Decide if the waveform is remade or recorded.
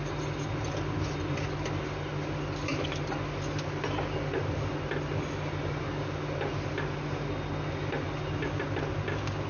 recorded